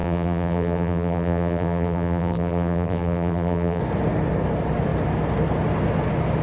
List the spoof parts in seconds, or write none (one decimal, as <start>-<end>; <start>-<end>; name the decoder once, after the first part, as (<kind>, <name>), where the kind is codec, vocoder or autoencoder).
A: 0.0-3.8 (vocoder, BigVGAN v2)